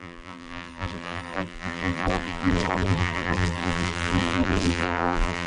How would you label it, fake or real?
fake